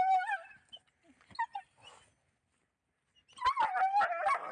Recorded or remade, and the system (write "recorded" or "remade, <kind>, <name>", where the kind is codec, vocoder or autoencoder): recorded